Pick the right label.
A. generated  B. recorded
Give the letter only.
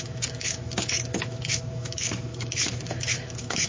A